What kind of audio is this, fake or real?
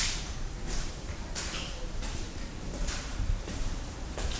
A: fake